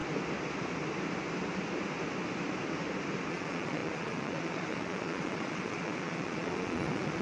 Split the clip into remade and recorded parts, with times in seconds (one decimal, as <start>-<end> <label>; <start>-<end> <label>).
0.0-3.3 recorded; 3.3-7.2 remade

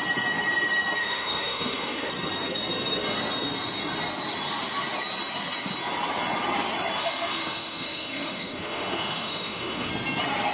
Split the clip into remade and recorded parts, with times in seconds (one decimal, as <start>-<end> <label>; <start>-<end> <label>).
0.0-1.0 recorded; 1.0-2.1 remade; 2.1-7.0 recorded; 7.0-9.9 remade; 9.9-10.5 recorded

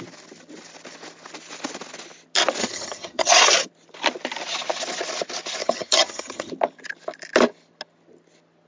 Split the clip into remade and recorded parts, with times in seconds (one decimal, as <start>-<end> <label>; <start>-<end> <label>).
0.0-2.6 recorded; 2.6-3.3 remade; 3.3-5.6 recorded; 5.6-6.5 remade; 6.5-8.7 recorded

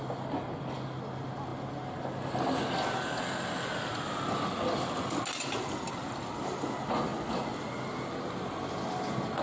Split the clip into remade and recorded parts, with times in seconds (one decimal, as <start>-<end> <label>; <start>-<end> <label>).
0.0-9.4 recorded

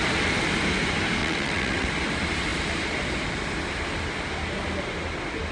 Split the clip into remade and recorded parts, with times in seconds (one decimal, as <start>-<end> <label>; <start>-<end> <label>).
0.0-1.2 recorded; 1.2-1.9 remade; 1.9-5.5 recorded

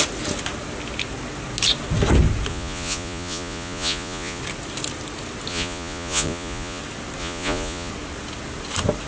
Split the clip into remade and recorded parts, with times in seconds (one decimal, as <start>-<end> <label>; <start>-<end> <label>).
0.0-2.5 recorded; 2.5-4.4 remade; 4.4-5.5 recorded; 5.5-6.8 remade; 6.8-7.2 recorded; 7.2-7.9 remade; 7.9-9.1 recorded

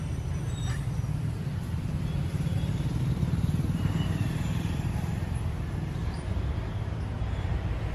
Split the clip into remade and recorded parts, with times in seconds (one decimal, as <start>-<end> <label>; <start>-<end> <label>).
0.0-1.5 remade; 1.5-2.3 recorded; 2.3-7.9 remade